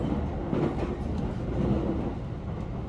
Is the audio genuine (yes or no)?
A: yes